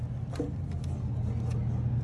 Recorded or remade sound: recorded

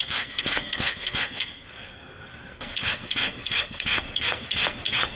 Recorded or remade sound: remade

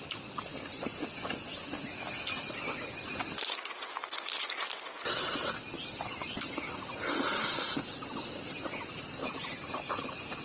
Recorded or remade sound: recorded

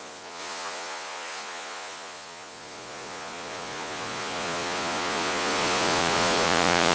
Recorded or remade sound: remade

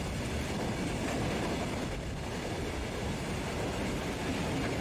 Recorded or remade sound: recorded